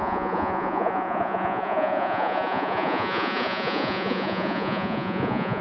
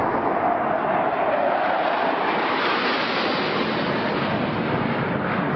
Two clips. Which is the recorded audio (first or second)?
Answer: second